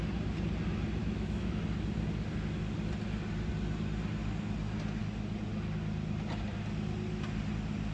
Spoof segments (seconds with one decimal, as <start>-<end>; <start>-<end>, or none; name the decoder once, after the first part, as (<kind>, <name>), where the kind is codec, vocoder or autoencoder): 1.0-1.6 (autoencoder, DAC-VAE)